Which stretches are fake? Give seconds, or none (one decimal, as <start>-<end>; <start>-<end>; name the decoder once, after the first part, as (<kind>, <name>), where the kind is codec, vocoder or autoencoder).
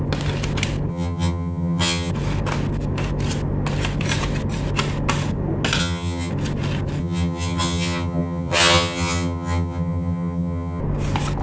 0.9-2.1 (vocoder, HiFi-GAN); 5.8-6.3; 7.0-10.8